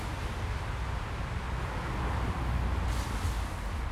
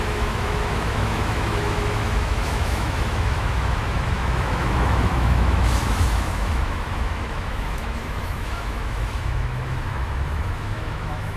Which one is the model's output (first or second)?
second